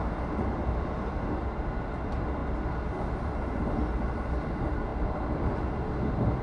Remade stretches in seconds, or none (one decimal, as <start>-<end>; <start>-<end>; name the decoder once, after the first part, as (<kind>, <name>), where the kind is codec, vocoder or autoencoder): 4.9-5.6 (vocoder, BigVGAN v2)